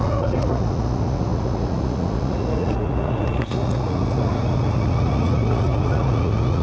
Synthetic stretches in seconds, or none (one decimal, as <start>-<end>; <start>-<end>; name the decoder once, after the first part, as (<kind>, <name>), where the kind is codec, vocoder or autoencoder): 0.0-6.6 (vocoder, Vocos)